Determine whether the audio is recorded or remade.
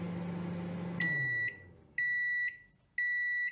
recorded